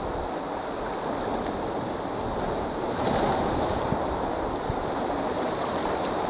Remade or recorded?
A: recorded